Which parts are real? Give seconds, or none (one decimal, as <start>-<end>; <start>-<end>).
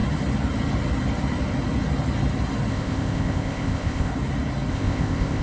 0.0-2.7; 4.1-4.7